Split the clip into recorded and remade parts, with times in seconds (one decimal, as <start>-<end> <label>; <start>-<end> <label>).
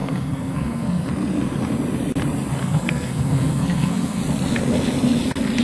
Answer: 0.0-1.1 remade; 1.1-2.6 recorded; 2.6-4.2 remade; 4.2-5.6 recorded